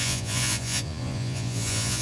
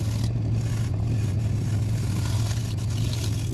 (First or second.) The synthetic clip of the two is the first